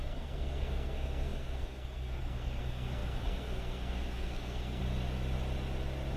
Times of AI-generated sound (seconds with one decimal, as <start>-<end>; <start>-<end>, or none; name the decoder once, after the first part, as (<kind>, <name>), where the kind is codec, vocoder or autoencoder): 0.0-4.8 (codec, SNAC)